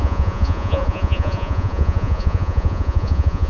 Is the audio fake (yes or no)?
yes